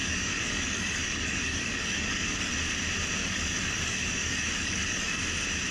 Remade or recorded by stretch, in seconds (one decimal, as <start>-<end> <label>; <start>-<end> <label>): 0.0-2.5 remade; 2.5-3.2 recorded; 3.2-5.2 remade; 5.2-5.7 recorded